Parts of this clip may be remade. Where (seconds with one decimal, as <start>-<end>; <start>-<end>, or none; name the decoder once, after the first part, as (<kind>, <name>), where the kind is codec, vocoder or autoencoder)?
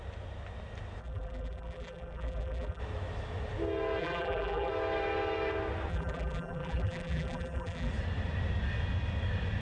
1.0-2.8 (vocoder, BigVGAN v2); 4.0-4.7; 5.9-7.9